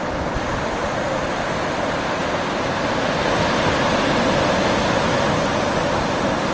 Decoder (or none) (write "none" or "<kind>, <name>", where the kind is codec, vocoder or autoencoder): none